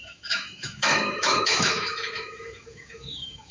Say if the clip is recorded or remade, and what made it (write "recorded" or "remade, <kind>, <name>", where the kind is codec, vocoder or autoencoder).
remade, autoencoder, DAC-VAE